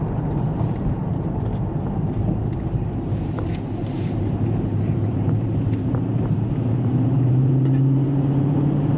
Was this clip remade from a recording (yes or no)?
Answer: yes